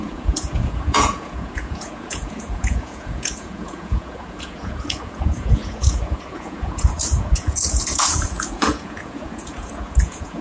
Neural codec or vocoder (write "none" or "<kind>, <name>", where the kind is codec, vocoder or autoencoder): vocoder, Vocos